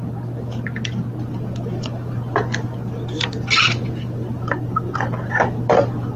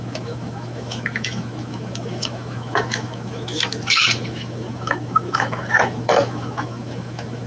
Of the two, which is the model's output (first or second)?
second